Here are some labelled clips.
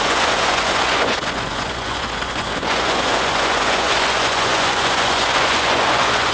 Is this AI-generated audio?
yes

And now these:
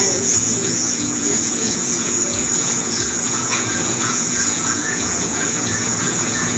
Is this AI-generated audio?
yes